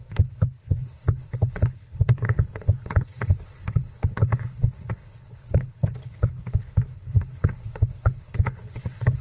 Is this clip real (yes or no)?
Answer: no